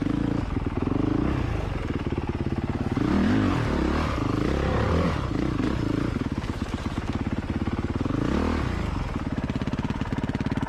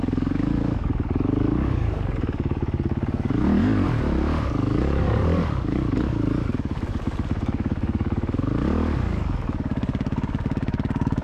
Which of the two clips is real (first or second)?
first